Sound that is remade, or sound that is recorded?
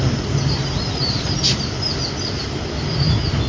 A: recorded